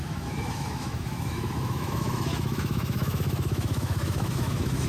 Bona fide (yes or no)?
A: no